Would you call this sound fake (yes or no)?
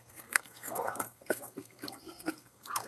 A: yes